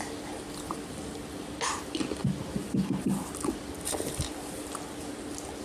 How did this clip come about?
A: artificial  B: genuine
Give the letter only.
B